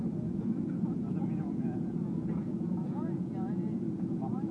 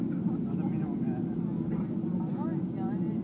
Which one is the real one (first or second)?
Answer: second